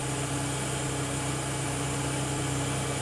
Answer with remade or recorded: recorded